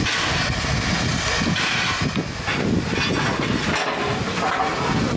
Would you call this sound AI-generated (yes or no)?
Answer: no